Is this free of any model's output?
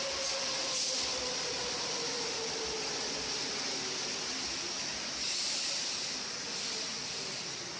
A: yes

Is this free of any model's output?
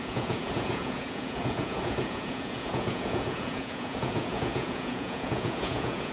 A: no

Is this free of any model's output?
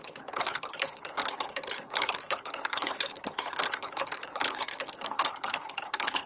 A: no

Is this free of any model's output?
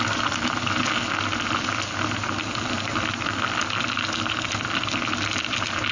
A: yes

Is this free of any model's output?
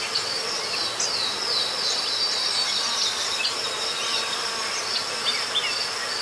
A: yes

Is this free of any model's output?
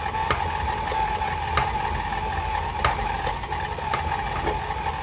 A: yes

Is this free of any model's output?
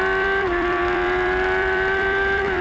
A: no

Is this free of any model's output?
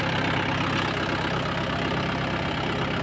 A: yes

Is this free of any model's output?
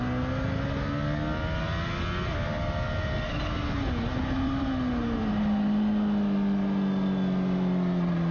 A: yes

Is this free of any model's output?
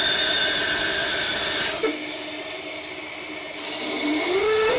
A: yes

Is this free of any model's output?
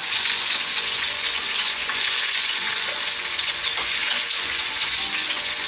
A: no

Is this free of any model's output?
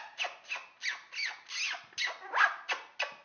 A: yes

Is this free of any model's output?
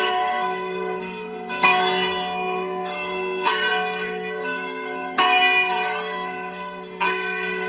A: no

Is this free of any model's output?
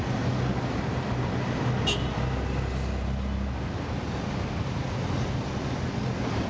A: yes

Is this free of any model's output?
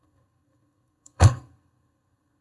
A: no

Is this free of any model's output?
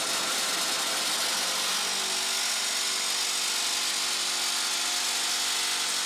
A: yes